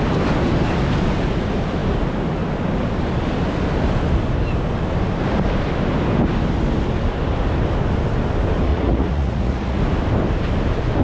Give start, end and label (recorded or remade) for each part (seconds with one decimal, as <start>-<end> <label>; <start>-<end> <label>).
0.0-8.7 recorded; 8.7-9.8 remade; 9.8-11.0 recorded